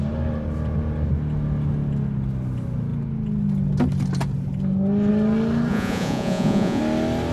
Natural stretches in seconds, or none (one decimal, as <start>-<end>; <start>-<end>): 0.0-5.7; 6.8-7.3